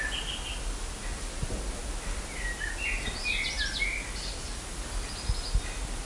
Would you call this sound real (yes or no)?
yes